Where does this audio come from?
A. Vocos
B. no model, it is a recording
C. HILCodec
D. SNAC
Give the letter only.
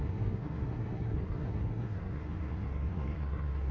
D